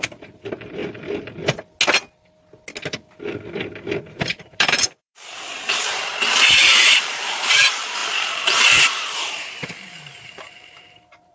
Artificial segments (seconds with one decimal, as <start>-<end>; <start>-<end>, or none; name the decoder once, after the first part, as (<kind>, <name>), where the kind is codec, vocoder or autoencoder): 0.0-0.8 (vocoder, BigVGAN v2); 4.0-11.3